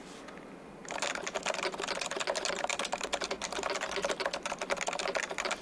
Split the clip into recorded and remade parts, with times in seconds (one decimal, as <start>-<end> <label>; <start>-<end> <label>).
0.0-5.6 recorded